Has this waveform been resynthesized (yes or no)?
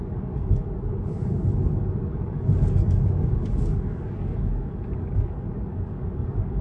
yes